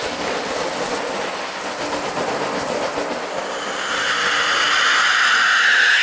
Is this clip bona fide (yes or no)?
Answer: yes